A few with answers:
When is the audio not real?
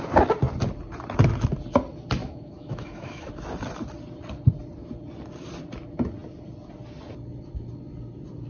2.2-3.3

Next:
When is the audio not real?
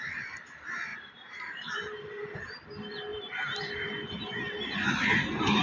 0.9-2.5; 3.1-3.9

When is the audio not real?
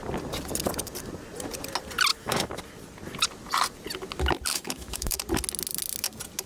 2.1-2.6; 4.5-5.2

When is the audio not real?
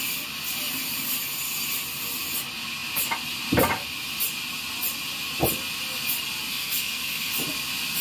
6.5-7.3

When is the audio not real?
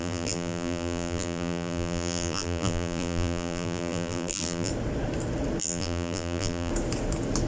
0.0-4.7; 5.6-6.7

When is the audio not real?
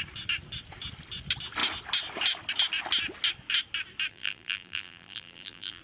4.1-5.8